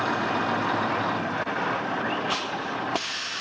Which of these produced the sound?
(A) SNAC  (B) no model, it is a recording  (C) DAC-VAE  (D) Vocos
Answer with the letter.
B